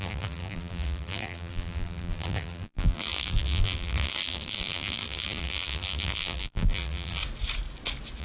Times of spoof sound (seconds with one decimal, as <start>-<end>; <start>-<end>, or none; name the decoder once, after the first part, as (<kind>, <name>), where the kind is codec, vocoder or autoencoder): 0.0-7.2 (vocoder, BigVGAN v2)